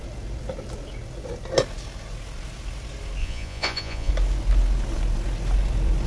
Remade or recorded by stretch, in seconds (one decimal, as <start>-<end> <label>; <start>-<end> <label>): 0.0-3.2 recorded; 3.2-4.1 remade; 4.1-6.1 recorded